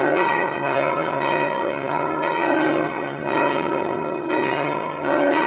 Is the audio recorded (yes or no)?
no